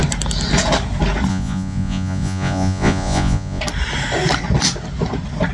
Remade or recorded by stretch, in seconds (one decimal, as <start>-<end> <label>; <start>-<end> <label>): 0.0-1.3 recorded; 1.3-3.6 remade; 3.6-5.5 recorded

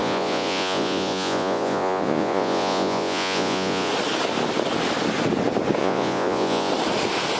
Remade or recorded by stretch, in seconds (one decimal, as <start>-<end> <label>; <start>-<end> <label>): 0.0-3.9 remade; 3.9-5.8 recorded; 5.8-6.7 remade; 6.7-7.4 recorded

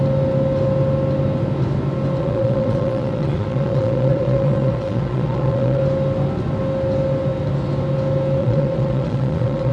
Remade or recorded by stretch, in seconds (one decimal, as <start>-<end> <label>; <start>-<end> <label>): 0.0-2.2 recorded; 2.2-5.8 remade; 5.8-8.4 recorded; 8.4-9.7 remade